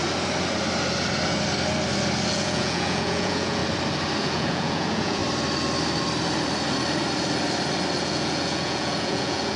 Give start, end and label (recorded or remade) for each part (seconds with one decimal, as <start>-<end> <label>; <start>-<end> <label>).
0.0-2.3 recorded; 2.3-3.6 remade; 3.6-4.2 recorded; 4.2-5.2 remade; 5.2-8.0 recorded; 8.0-9.6 remade